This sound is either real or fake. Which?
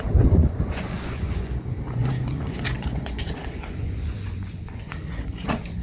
fake